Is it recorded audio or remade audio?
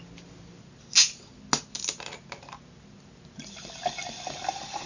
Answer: recorded